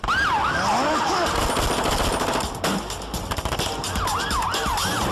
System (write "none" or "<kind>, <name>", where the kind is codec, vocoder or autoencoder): none